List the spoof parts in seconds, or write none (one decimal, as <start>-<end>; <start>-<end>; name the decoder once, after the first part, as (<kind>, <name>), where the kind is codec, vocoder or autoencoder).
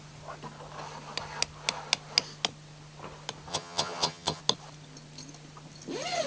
3.5-4.4 (vocoder, HiFi-GAN)